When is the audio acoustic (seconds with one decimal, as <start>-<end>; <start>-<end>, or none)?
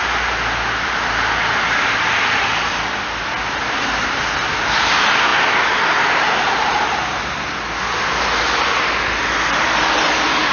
0.0-10.5